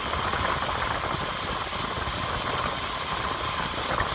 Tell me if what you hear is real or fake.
real